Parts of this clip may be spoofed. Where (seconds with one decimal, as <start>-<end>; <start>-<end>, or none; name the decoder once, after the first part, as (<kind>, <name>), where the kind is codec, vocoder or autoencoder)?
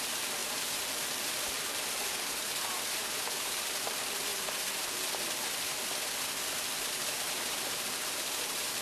0.0-0.4 (vocoder, BigVGAN v2); 1.7-4.3; 6.8-8.8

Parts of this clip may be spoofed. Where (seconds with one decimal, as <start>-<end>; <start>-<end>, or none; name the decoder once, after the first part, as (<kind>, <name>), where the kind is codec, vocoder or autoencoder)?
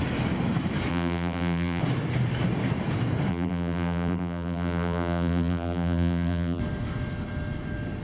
0.9-1.8 (vocoder, BigVGAN v2); 3.3-6.6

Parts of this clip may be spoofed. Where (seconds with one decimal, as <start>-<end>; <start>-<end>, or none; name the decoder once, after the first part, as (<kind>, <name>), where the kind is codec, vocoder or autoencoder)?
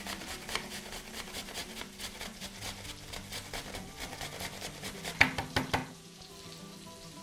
5.8-6.3 (vocoder, Vocos)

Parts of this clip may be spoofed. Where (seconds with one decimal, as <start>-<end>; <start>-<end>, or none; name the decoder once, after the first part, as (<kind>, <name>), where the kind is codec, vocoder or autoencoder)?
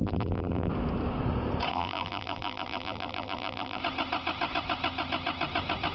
0.0-0.7 (vocoder, BigVGAN v2); 1.7-3.8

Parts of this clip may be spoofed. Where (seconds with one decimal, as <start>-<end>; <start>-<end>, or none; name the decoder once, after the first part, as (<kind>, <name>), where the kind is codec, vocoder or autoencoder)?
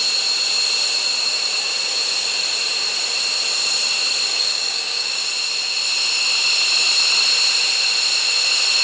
4.3-5.2 (codec, DAC)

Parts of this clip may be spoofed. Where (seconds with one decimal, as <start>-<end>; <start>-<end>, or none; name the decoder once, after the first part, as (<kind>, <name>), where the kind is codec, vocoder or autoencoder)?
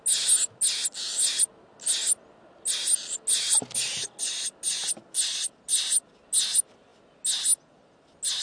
none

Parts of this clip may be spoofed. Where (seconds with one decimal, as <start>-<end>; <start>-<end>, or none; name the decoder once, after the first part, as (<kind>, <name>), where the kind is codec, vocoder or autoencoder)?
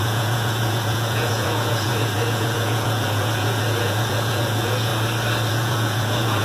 0.0-4.9 (vocoder, Vocos); 5.5-6.4